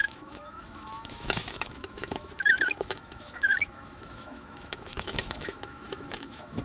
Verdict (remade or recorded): remade